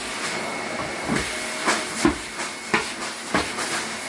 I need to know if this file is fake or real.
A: real